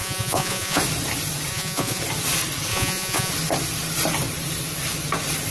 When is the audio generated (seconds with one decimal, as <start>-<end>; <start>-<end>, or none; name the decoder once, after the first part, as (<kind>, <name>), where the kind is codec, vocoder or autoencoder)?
0.0-0.8 (vocoder, Vocos); 1.5-2.0; 2.7-3.3

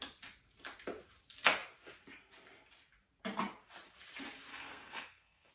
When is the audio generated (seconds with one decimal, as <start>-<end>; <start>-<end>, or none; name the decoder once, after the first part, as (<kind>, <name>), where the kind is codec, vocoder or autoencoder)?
4.5-5.5 (codec, SNAC)

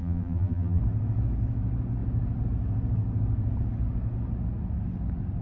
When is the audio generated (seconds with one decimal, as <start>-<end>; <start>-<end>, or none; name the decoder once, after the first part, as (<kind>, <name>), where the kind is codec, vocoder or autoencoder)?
0.0-0.8 (vocoder, BigVGAN v2)

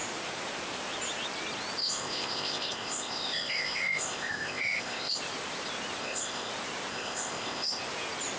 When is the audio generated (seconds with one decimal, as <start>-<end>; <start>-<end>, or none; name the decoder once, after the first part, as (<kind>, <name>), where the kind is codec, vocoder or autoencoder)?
1.8-5.2 (codec, ZipCodec); 6.0-6.5; 6.9-7.8